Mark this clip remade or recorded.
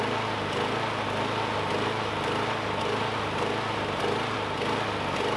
recorded